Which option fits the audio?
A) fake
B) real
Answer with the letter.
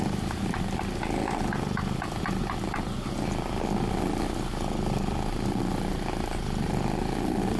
B